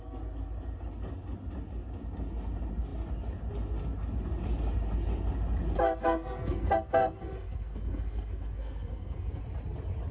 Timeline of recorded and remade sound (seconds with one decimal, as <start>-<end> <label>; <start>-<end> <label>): 0.0-5.8 recorded; 5.8-9.4 remade; 9.4-10.1 recorded